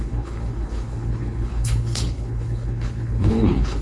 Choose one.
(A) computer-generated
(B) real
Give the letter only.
A